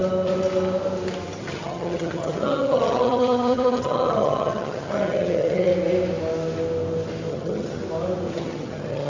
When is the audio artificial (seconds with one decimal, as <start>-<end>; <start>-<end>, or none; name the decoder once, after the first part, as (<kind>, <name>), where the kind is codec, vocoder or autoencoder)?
1.4-5.7 (vocoder, HiFi-GAN); 7.3-7.8; 8.3-9.1